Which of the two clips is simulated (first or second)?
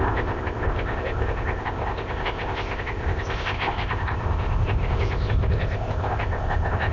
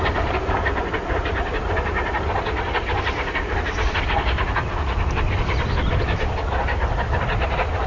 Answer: first